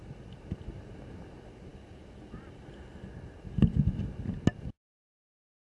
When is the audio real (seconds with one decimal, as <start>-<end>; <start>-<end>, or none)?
0.0-5.6